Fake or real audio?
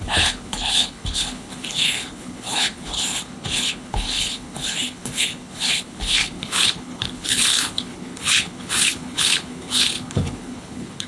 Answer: fake